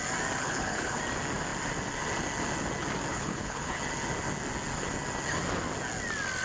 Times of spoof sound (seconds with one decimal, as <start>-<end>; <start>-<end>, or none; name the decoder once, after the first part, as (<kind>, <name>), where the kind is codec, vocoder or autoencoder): 0.4-1.0 (codec, HILCodec); 3.1-3.8